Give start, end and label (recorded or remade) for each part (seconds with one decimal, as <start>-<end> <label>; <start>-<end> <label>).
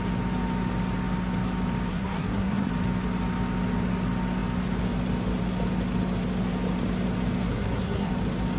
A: 0.0-1.9 recorded; 1.9-2.7 remade; 2.7-7.4 recorded; 7.4-8.1 remade; 8.1-8.6 recorded